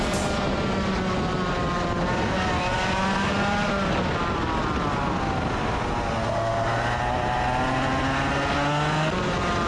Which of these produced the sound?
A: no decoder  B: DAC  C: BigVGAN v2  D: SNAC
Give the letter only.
A